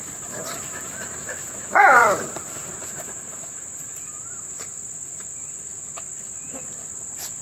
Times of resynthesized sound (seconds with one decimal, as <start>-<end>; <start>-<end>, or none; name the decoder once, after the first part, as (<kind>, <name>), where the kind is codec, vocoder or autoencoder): 0.4-4.7 (vocoder, BigVGAN v2)